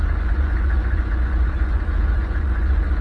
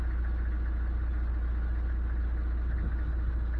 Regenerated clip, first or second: first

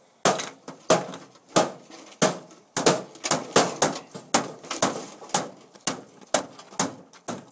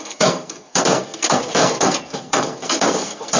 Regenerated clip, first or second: second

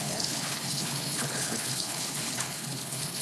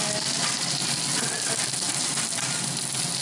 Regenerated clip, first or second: first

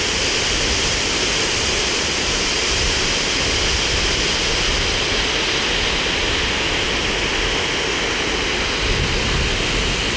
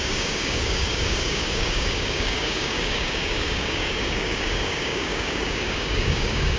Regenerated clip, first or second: second